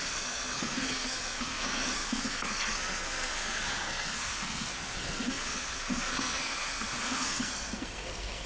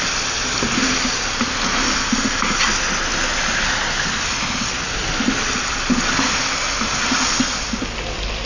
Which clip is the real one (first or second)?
second